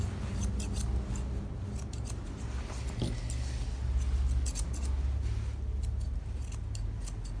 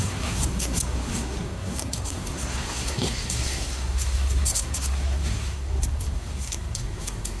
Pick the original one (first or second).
first